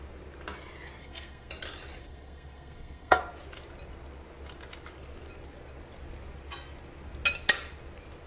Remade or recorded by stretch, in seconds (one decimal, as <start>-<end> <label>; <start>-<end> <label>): 0.0-1.0 recorded; 1.0-1.5 remade; 1.5-2.0 recorded; 2.0-3.2 remade; 3.2-8.3 recorded